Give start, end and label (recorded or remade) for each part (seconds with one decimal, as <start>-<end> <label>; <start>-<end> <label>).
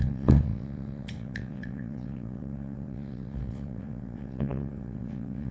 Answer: 0.0-5.5 remade